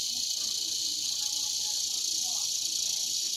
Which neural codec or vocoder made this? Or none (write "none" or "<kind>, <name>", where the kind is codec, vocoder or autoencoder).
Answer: none